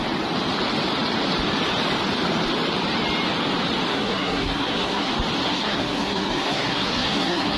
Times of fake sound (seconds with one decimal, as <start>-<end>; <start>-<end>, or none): 3.9-5.1; 5.5-7.6